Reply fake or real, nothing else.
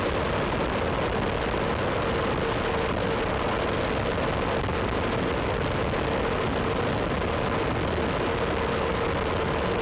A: real